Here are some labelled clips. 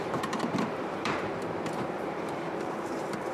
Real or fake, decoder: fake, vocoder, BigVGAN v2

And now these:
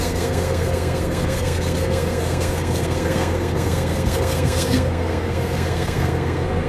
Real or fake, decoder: fake, codec, SNAC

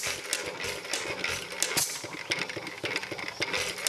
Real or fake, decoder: real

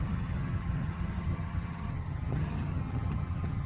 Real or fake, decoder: fake, vocoder, HiFi-GAN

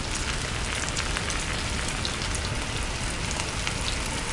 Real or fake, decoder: real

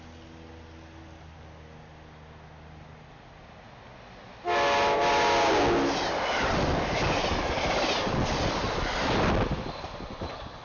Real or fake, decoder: real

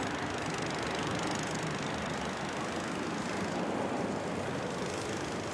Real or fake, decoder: real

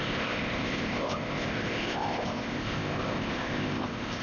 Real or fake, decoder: fake, codec, ZipCodec